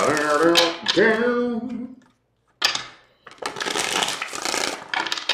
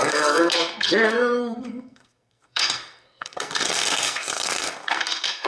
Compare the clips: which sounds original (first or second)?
first